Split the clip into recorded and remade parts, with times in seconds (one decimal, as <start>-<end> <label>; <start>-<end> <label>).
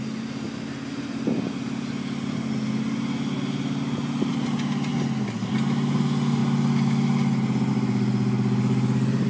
0.0-9.3 recorded